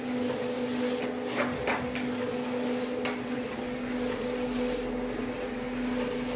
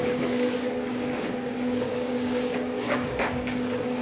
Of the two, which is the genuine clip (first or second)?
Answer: first